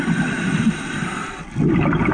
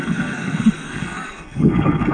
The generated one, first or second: second